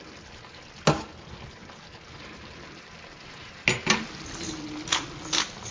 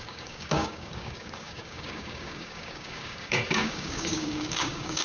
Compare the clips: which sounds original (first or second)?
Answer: first